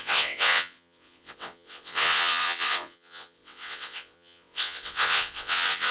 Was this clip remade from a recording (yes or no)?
yes